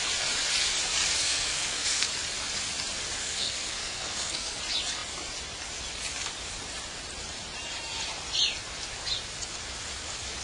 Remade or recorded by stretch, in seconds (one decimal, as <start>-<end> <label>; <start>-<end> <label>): 0.0-1.2 recorded; 1.2-2.1 remade; 2.1-3.2 recorded; 3.2-4.6 remade; 4.6-10.4 recorded